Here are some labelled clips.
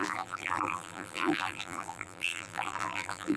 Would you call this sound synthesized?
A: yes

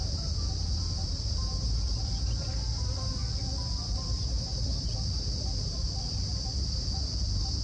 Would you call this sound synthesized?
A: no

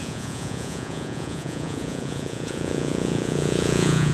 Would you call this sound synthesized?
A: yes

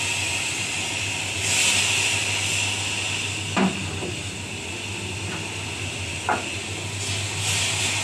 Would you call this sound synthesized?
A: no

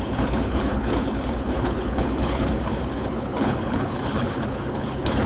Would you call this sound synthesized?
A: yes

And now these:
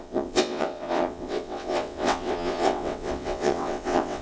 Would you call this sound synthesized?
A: yes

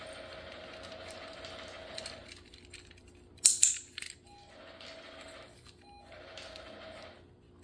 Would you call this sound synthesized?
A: no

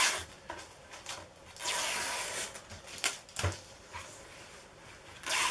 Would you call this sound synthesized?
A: no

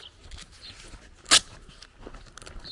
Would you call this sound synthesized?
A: no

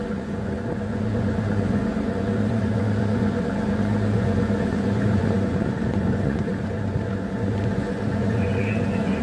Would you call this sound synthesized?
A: yes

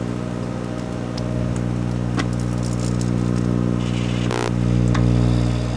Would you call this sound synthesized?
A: no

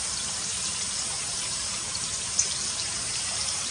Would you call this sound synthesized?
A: yes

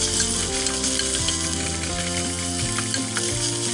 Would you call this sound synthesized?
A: no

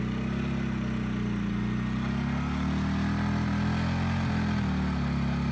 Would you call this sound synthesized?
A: no